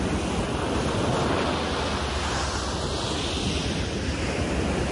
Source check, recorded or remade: recorded